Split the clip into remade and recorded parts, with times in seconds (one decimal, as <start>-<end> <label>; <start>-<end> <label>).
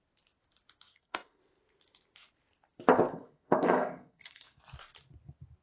0.0-0.9 recorded; 0.9-1.4 remade; 1.4-3.1 recorded; 3.1-4.6 remade; 4.6-5.6 recorded